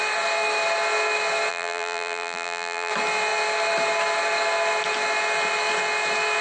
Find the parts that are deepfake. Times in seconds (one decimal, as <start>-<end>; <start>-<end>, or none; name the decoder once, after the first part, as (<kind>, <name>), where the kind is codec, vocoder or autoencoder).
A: 1.5-2.9 (vocoder, BigVGAN v2)